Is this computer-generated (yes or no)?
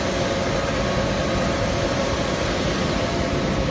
no